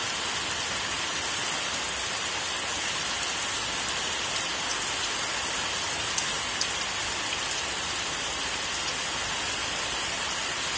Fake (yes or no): yes